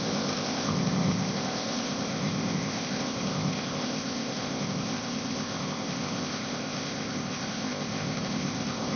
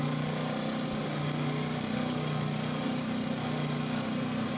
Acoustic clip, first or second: second